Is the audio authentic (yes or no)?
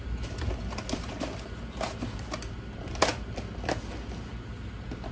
yes